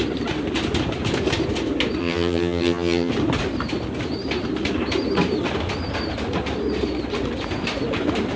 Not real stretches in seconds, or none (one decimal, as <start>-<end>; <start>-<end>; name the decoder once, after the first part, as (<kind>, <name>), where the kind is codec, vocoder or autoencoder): 2.0-3.1 (vocoder, HiFi-GAN)